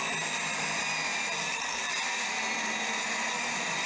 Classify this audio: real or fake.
real